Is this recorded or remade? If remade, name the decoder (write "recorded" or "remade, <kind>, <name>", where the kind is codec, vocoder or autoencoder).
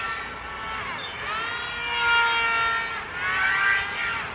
recorded